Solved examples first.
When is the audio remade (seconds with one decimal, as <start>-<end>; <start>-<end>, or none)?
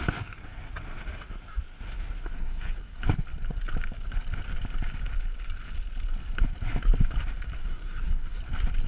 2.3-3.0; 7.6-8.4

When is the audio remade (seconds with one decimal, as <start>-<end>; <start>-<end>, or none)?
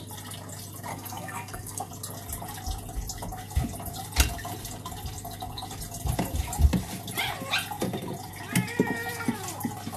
0.9-1.9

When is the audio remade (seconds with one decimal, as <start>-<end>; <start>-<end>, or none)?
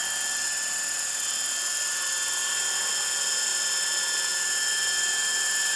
none